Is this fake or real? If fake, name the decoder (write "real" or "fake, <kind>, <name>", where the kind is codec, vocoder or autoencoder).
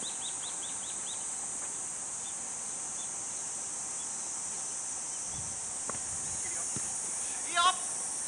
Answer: real